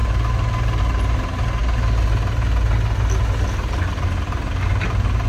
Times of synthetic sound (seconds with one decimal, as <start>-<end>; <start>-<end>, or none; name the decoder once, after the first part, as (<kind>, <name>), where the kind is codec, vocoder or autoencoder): none